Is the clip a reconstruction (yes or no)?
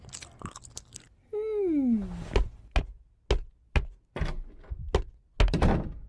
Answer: no